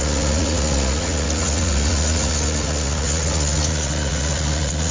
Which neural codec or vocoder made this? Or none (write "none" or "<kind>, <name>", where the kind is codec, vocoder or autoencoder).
vocoder, Vocos